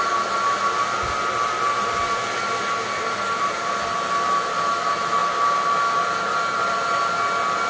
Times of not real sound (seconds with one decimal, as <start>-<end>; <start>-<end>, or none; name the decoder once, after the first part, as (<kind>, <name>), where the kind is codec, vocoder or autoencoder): none